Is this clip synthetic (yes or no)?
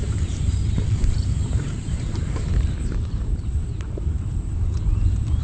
yes